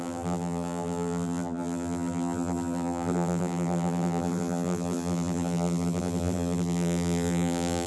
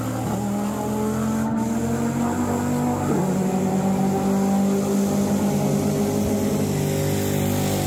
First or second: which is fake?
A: first